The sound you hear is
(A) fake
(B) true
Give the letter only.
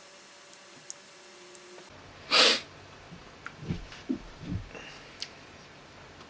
B